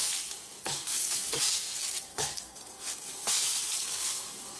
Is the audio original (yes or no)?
no